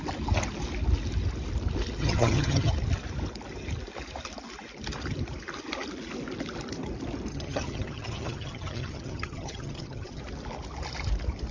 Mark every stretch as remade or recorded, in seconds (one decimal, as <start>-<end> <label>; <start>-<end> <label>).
0.0-2.0 recorded; 2.0-2.7 remade; 2.7-7.3 recorded; 7.3-10.2 remade; 10.2-11.5 recorded